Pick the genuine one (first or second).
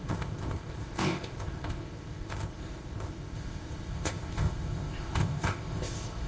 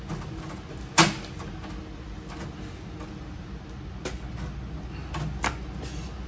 second